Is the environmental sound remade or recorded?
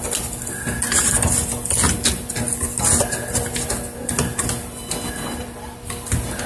recorded